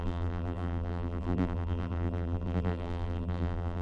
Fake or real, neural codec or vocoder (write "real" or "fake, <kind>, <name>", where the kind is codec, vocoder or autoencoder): fake, vocoder, BigVGAN v2